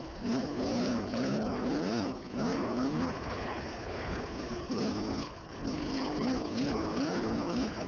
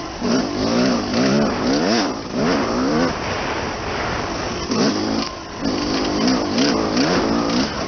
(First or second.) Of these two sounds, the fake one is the first